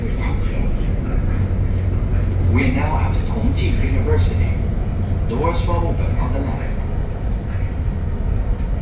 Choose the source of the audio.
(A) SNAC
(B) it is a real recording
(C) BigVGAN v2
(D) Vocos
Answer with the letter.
B